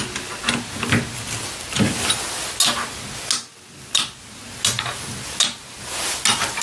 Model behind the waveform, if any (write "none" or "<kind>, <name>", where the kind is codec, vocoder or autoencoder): none